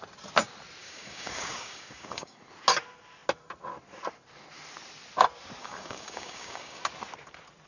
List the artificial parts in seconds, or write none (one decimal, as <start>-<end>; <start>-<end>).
0.8-2.4; 5.6-6.8